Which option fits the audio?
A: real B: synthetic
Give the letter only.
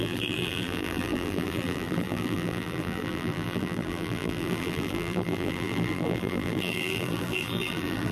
B